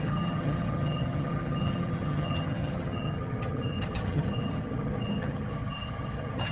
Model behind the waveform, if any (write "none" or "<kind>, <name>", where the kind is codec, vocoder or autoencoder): vocoder, HiFi-GAN